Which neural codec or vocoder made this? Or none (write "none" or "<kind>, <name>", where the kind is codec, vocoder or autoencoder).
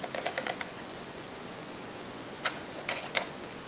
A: vocoder, Vocos